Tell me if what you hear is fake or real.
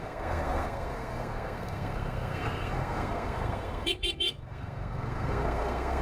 fake